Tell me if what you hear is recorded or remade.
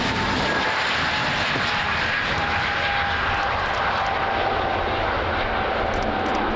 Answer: recorded